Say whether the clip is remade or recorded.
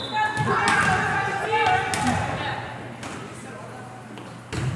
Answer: recorded